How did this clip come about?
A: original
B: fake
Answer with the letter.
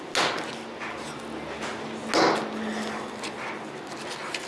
A